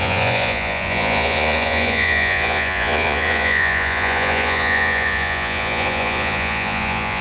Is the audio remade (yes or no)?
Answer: yes